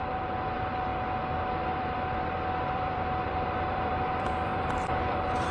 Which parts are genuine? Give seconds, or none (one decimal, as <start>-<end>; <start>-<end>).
0.9-1.5